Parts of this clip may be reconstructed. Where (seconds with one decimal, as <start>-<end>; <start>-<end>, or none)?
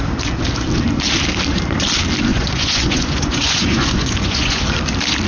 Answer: 2.3-4.6